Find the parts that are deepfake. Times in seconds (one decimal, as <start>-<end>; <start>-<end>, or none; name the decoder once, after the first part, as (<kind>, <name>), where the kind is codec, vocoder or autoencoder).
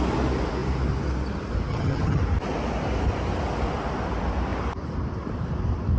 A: 1.7-2.2 (vocoder, HiFi-GAN)